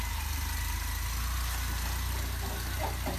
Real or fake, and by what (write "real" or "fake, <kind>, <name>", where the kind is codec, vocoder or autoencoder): real